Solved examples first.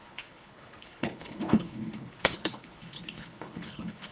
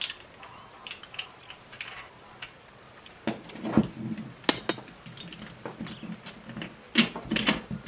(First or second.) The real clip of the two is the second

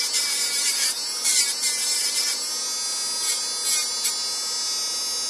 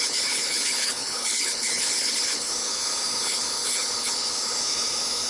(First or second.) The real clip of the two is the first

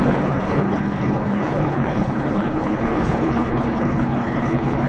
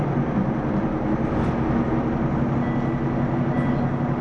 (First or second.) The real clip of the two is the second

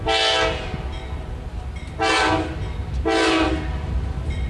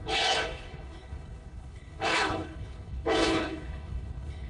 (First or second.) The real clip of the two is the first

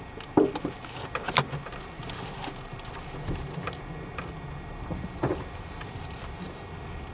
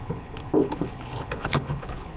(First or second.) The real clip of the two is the first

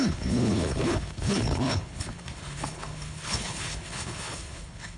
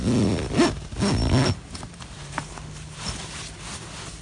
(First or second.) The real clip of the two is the second